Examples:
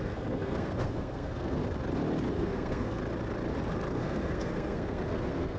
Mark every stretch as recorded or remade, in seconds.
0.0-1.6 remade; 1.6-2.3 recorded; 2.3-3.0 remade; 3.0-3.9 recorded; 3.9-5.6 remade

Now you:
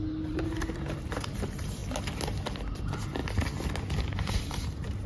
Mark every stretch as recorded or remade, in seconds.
0.0-1.8 remade; 1.8-2.8 recorded; 2.8-3.2 remade; 3.2-4.0 recorded; 4.0-5.1 remade

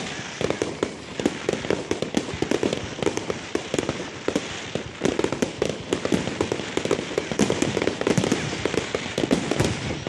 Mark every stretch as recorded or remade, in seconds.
0.0-10.1 remade